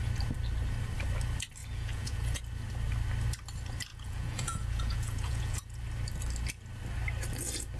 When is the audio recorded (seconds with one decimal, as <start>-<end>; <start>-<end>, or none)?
0.0-1.6; 2.4-3.9; 5.8-7.8